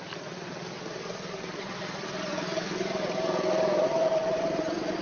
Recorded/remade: remade